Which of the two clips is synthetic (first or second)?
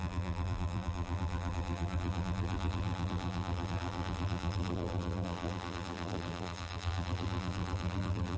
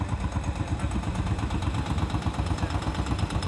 first